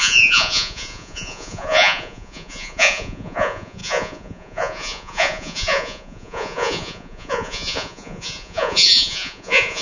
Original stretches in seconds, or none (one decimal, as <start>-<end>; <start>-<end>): none